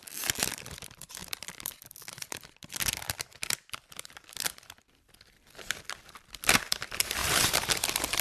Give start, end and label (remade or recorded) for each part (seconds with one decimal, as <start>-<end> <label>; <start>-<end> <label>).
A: 0.0-7.2 recorded; 7.2-7.7 remade; 7.7-8.2 recorded